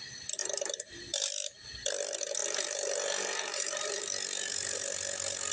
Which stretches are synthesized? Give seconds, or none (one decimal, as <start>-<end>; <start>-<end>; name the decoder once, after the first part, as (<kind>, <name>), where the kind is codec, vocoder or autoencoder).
0.4-1.3 (vocoder, BigVGAN v2); 2.4-4.0